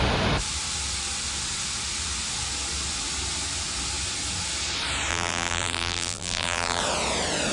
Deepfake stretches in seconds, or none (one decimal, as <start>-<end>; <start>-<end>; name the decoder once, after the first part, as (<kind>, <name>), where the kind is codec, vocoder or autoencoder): 5.1-6.8 (vocoder, BigVGAN v2)